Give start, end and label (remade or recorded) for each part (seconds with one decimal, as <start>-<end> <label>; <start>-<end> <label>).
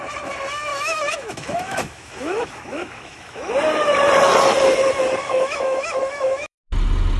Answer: 0.0-0.7 recorded; 0.7-3.5 remade; 3.5-5.2 recorded; 5.2-6.6 remade; 6.6-7.2 recorded